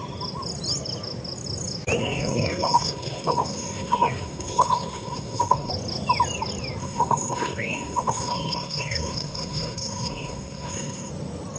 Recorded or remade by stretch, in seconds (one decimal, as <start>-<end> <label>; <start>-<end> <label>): 0.0-2.0 recorded; 2.0-5.7 remade; 5.7-6.8 recorded; 6.8-11.1 remade; 11.1-11.6 recorded